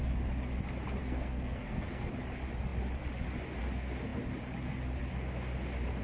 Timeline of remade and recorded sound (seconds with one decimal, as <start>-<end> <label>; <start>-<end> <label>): 0.0-1.0 recorded; 1.0-2.1 remade; 2.1-6.0 recorded